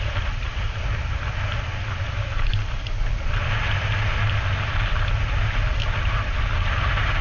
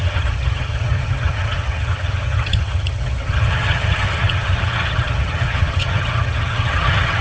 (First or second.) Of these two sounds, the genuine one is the first